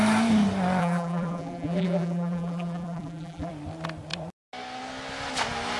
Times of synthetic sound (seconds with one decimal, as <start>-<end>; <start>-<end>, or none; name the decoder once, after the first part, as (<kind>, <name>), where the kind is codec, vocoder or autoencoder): 0.8-3.5 (vocoder, BigVGAN v2)